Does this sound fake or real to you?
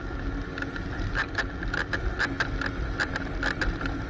fake